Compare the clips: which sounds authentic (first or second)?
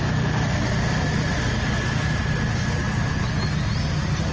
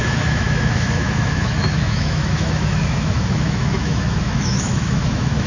first